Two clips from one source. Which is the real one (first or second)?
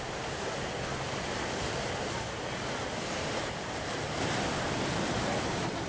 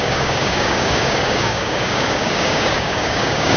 first